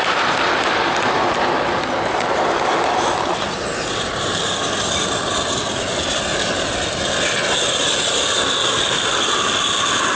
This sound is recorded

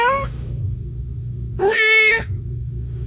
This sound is remade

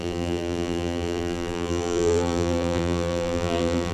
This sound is remade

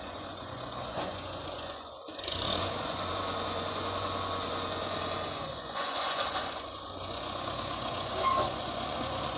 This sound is remade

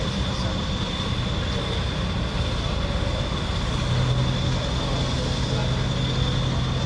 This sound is recorded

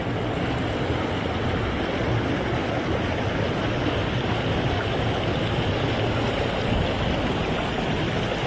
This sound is recorded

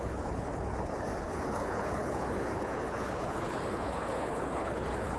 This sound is remade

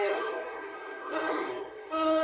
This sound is remade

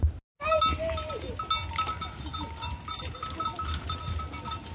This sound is recorded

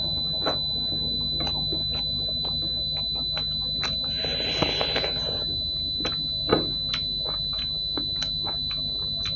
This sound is recorded